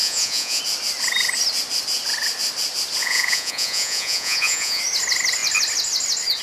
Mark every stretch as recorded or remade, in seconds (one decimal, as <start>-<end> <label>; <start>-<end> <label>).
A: 0.0-0.6 remade; 0.6-3.0 recorded; 3.0-4.8 remade; 4.8-6.4 recorded